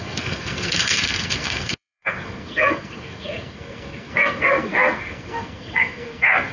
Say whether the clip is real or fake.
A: fake